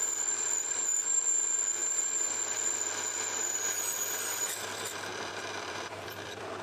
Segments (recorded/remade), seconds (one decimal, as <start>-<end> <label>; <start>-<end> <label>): 0.0-1.8 recorded; 1.8-2.4 remade; 2.4-5.1 recorded; 5.1-6.6 remade